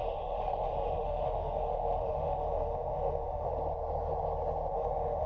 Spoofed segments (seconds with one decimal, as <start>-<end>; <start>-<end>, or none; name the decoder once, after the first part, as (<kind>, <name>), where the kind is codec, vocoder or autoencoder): 0.0-3.5 (autoencoder, DAC-VAE); 4.7-5.3